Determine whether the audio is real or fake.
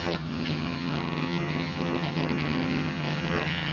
fake